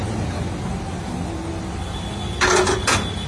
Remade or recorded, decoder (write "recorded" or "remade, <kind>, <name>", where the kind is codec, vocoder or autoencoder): recorded